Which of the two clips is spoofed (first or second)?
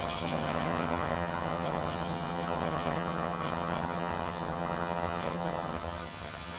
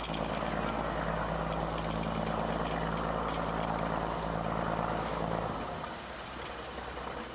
first